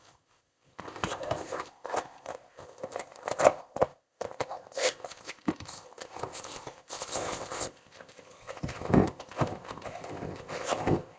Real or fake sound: fake